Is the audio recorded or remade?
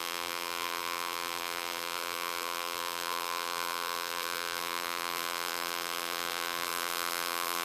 remade